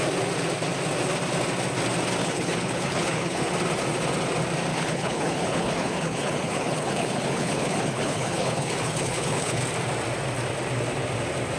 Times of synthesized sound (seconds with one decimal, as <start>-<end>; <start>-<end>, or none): 2.2-3.5; 4.7-9.6